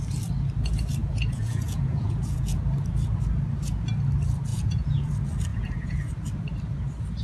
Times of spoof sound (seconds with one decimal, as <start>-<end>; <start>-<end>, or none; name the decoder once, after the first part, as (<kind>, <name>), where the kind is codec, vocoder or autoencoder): 1.0-2.6 (vocoder, Vocos); 4.5-5.1; 5.5-6.1